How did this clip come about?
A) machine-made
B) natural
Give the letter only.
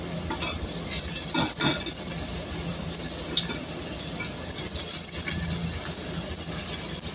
B